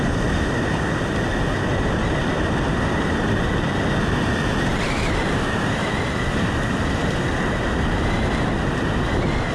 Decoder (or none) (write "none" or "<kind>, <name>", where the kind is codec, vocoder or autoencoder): none